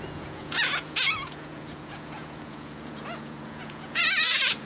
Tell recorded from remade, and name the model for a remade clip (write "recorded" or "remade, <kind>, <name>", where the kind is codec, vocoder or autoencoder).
remade, vocoder, Vocos